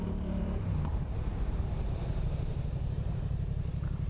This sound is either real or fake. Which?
fake